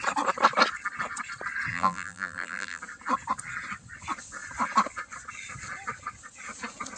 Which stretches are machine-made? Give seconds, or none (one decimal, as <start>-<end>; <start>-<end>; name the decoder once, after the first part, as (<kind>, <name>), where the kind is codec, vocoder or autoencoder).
1.7-2.8 (vocoder, BigVGAN v2)